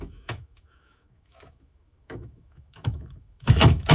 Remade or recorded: remade